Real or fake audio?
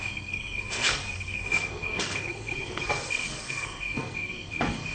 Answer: fake